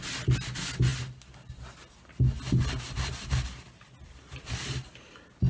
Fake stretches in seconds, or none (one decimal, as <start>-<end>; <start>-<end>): none